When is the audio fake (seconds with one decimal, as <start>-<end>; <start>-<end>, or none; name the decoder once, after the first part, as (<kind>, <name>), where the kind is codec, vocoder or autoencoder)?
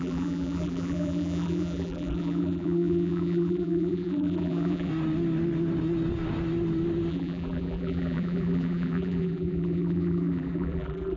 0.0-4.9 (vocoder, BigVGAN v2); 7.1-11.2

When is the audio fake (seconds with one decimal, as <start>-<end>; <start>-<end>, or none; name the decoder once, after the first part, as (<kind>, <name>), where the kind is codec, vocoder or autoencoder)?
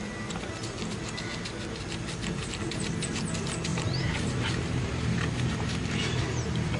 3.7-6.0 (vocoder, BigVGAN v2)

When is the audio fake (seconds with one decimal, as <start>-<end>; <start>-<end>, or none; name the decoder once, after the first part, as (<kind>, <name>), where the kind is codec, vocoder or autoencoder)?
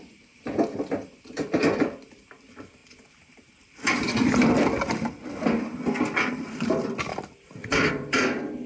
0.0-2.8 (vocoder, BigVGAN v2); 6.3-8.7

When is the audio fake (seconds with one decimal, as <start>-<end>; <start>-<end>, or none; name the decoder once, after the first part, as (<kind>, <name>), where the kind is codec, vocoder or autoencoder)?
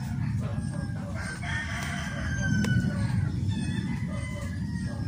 0.5-3.6 (vocoder, BigVGAN v2)